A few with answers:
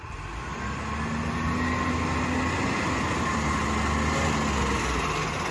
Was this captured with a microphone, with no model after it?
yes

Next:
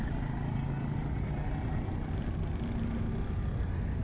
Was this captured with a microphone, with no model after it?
yes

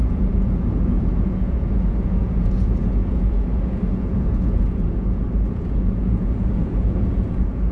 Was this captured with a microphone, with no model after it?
no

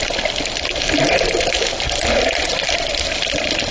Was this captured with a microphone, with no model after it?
yes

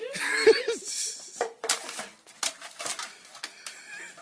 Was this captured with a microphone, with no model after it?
yes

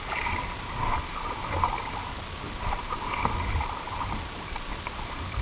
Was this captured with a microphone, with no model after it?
yes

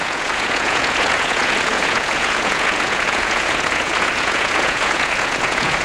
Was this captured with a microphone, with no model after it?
no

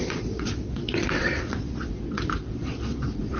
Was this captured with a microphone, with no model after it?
no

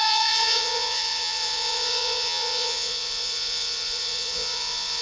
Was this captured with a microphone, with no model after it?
no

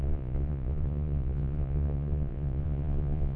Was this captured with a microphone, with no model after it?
no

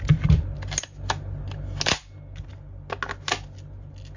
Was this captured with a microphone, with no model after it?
yes